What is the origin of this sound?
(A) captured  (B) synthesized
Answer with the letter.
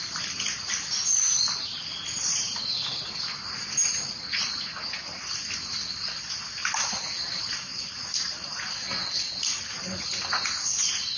A